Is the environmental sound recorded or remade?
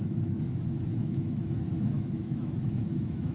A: remade